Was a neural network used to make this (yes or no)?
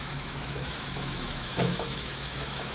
yes